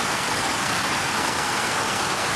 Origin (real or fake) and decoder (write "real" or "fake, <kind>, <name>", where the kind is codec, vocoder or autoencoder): fake, codec, SNAC